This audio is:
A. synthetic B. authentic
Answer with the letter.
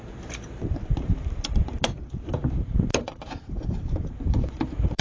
A